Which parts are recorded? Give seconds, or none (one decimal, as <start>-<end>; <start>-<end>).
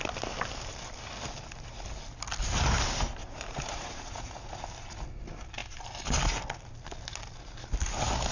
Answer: 0.0-3.2; 4.6-8.3